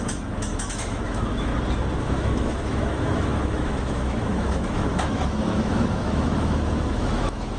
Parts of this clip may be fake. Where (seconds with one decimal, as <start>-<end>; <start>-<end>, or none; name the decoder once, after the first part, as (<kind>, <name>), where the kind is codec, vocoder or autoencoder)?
0.0-1.5 (autoencoder, DAC-VAE); 2.0-7.6